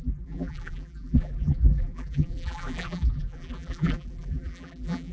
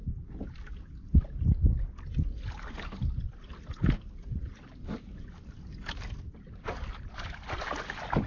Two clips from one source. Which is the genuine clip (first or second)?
second